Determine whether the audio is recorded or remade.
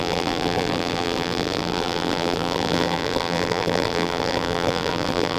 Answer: remade